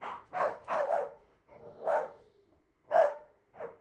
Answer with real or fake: fake